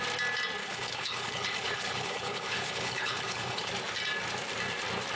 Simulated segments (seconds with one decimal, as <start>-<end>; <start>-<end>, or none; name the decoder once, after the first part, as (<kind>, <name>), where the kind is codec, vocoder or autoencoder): 0.6-3.7 (codec, HILCodec)